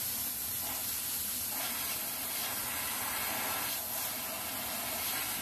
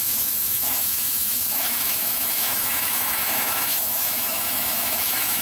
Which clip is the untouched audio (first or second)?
first